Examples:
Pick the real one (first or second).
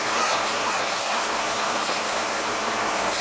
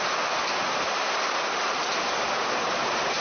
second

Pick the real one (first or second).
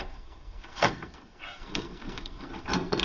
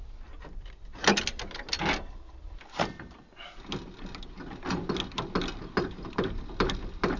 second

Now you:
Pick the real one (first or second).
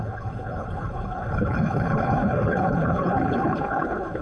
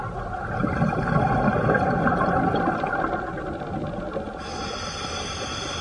second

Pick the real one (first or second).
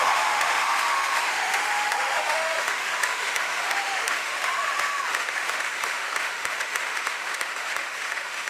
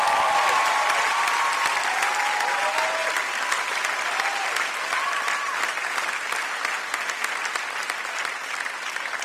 second